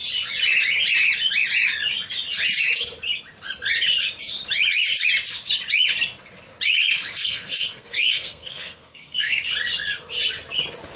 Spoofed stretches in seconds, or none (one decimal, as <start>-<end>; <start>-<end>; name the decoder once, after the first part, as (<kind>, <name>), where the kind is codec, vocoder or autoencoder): 7.1-9.4 (codec, SNAC)